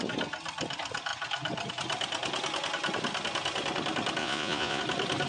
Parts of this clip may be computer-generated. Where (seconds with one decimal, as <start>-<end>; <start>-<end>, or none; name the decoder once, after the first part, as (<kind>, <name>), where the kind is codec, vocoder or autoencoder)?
4.2-4.8 (vocoder, Vocos)